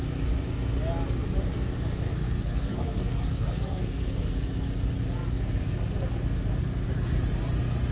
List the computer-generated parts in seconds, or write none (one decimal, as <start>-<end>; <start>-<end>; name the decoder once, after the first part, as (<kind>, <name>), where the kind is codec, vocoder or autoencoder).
2.1-4.3 (codec, SNAC)